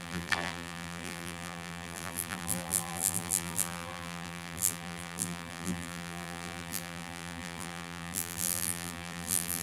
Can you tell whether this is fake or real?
fake